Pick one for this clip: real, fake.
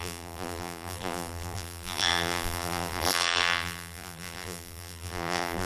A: fake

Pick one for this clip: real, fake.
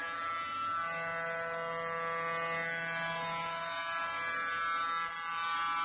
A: real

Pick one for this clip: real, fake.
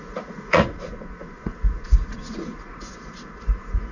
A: fake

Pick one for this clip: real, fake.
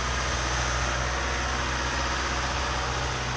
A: real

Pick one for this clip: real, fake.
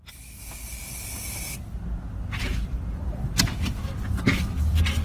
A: fake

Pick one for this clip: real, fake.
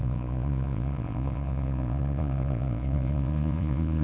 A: fake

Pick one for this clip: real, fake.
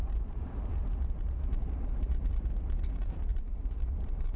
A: fake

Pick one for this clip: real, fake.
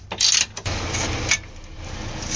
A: real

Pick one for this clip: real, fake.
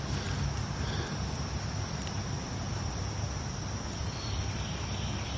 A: real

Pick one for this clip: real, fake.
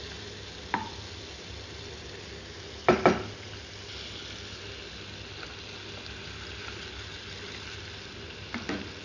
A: real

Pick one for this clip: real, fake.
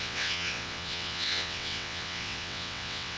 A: fake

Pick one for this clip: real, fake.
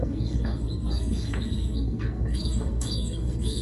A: fake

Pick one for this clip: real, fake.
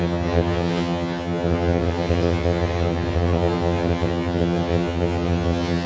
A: fake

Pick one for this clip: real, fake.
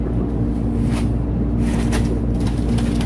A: real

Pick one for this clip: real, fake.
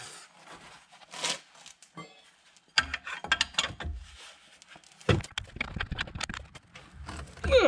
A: real